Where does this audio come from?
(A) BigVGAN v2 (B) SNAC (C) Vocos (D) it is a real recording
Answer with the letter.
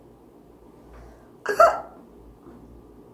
D